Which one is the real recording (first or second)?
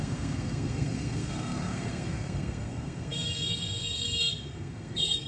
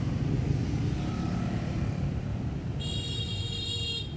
second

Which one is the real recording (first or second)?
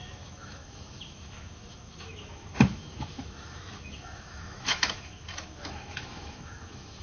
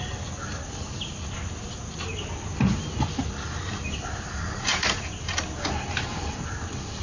second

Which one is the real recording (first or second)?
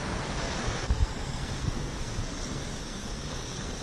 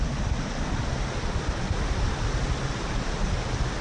second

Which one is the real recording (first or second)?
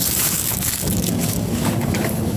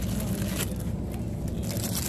second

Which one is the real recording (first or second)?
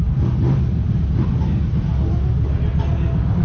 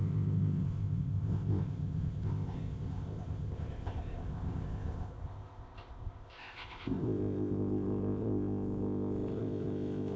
first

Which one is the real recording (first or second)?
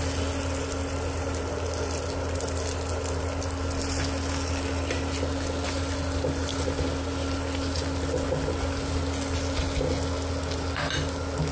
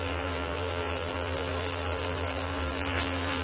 first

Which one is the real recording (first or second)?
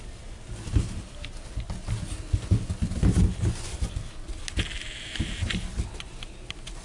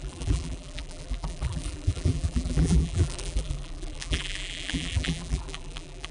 first